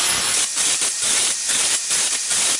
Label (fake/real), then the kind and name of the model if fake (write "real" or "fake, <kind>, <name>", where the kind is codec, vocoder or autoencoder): real